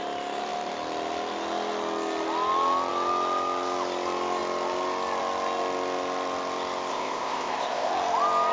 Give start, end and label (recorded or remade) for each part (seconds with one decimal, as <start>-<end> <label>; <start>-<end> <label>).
0.0-6.9 recorded; 6.9-7.9 remade; 7.9-8.5 recorded